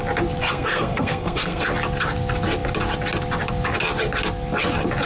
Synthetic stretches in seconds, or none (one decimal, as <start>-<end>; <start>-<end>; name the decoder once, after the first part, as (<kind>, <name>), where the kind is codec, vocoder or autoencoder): 0.4-1.6 (codec, SNAC)